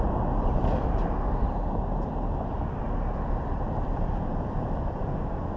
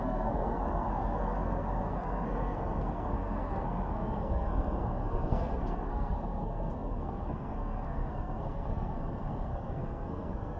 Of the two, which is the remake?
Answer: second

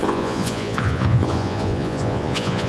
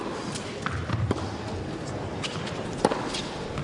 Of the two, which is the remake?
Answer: first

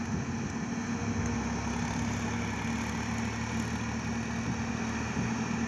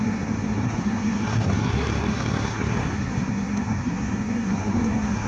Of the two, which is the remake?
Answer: second